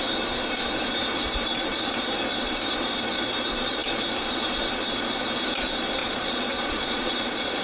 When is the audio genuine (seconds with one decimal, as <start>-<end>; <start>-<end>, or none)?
0.0-6.0